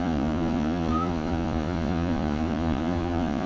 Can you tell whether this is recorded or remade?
remade